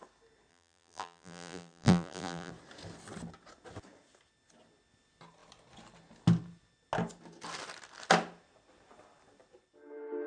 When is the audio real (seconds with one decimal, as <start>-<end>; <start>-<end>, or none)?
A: 0.0-0.5; 2.5-10.3